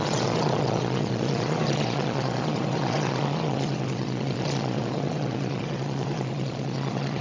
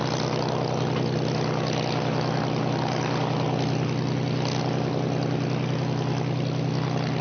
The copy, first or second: first